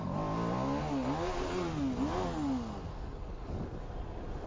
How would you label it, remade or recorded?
recorded